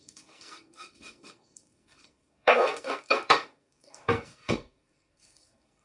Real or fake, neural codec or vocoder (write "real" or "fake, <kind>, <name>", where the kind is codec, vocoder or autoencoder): fake, codec, SNAC